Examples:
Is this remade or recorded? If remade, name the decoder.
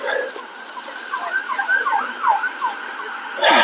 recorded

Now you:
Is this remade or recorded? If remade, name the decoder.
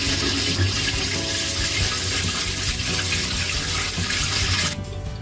recorded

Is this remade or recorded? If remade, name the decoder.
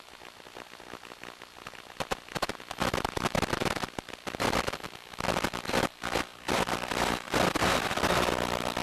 recorded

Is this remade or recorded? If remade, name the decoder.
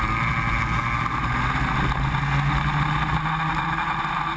recorded